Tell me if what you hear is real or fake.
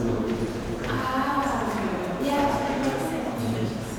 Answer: fake